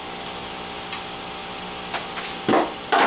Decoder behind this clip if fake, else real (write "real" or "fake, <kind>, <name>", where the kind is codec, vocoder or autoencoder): real